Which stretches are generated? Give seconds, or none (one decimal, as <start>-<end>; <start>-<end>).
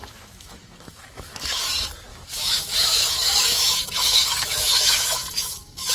0.0-1.7; 2.1-5.9